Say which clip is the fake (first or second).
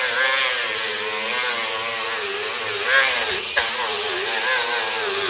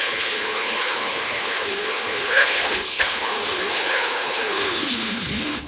second